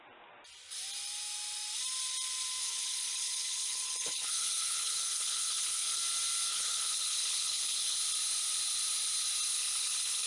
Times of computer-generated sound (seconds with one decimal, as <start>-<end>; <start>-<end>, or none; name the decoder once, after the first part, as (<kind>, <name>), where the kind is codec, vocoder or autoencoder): 2.6-6.0 (codec, HILCodec); 6.5-8.0; 9.5-10.3